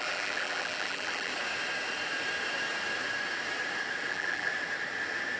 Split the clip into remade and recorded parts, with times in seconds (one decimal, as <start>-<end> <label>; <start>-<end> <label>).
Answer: 0.0-1.3 remade; 1.3-4.1 recorded; 4.1-4.5 remade; 4.5-5.4 recorded